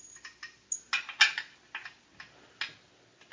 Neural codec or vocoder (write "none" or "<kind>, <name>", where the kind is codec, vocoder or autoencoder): none